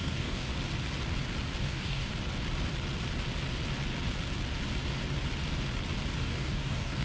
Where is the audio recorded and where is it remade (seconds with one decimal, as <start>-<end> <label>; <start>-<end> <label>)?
0.0-0.5 remade; 0.5-1.6 recorded; 1.6-2.1 remade; 2.1-6.2 recorded; 6.2-7.0 remade